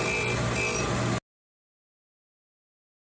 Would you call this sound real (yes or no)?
yes